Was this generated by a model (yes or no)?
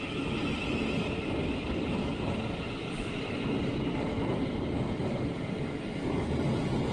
no